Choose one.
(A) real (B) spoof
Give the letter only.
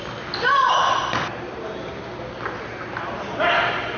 A